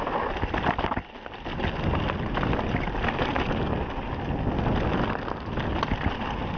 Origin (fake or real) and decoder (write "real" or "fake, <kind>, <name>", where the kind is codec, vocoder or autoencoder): real